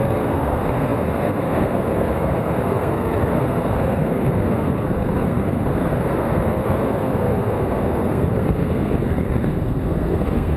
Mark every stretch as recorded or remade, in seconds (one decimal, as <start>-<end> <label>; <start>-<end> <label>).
0.0-10.6 remade